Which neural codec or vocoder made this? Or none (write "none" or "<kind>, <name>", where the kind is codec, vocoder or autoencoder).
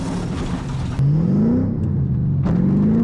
none